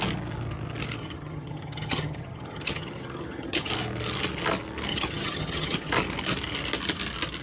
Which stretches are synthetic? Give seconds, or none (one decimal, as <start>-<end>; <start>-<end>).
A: 1.0-3.7; 4.9-5.9